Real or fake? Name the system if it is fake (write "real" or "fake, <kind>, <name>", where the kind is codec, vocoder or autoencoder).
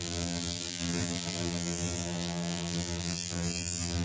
fake, vocoder, BigVGAN v2